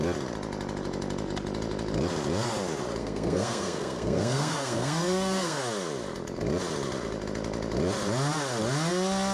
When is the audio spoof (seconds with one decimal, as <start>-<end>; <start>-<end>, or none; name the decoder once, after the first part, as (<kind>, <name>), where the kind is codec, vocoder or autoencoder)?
3.0-5.6 (codec, SNAC)

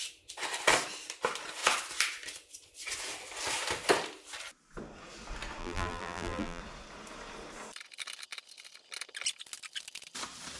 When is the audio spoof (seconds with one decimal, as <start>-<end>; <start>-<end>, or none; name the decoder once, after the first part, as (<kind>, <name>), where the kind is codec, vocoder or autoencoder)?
5.6-6.6 (vocoder, BigVGAN v2)

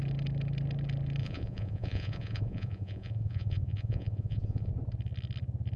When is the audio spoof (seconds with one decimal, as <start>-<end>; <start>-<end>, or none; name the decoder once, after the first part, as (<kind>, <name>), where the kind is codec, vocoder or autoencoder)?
1.2-4.7 (vocoder, Vocos)